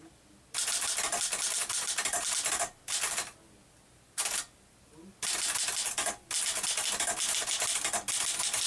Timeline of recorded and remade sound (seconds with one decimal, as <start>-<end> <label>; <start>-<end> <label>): 0.0-8.7 recorded